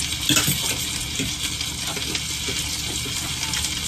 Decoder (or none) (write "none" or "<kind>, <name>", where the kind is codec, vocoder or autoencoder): none